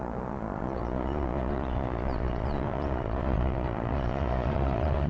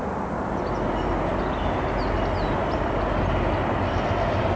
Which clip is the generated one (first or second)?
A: first